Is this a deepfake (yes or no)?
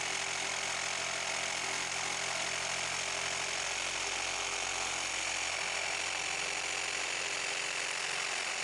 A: no